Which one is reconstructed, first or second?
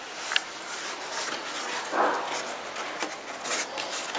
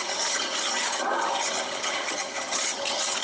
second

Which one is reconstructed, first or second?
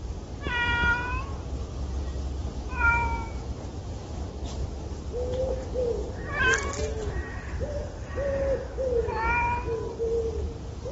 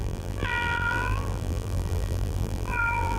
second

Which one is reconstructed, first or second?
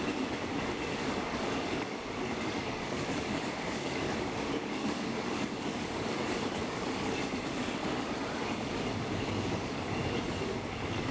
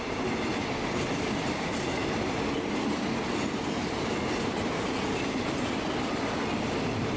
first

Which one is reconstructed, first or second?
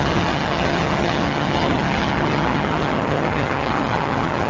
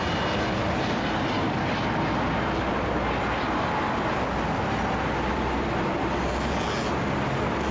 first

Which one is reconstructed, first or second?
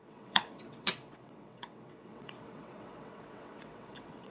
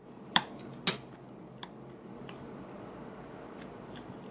first